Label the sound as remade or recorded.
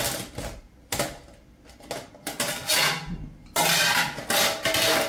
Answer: recorded